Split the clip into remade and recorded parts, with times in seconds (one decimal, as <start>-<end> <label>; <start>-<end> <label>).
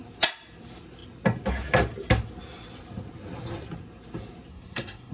0.0-4.5 recorded; 4.5-5.1 remade